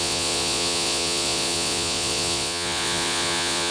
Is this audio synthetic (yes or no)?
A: yes